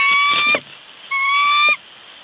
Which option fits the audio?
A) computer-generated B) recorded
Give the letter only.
B